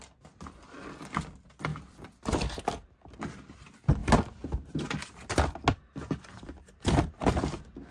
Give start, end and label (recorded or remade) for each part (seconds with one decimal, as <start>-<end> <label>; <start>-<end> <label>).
0.0-1.7 recorded; 1.7-3.2 remade; 3.2-7.9 recorded

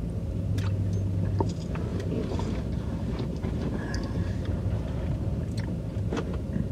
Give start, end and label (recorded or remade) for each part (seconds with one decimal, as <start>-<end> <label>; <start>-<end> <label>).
0.0-1.9 recorded; 1.9-5.9 remade; 5.9-6.7 recorded